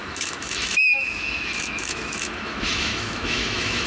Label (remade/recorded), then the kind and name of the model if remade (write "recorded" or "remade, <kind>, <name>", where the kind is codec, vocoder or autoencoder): remade, autoencoder, DAC-VAE